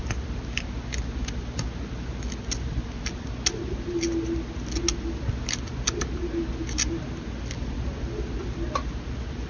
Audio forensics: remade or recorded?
recorded